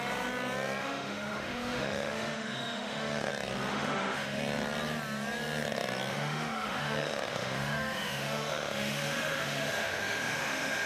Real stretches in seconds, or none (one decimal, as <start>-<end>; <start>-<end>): 0.0-0.8; 3.3-3.7; 4.4-6.1